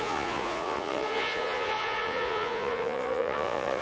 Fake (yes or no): yes